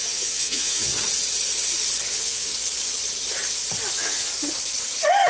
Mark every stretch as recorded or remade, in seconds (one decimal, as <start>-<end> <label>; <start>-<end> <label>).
0.0-0.9 remade; 0.9-2.1 recorded; 2.1-2.5 remade; 2.5-3.9 recorded; 3.9-4.3 remade; 4.3-5.3 recorded